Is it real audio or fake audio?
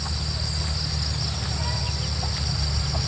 real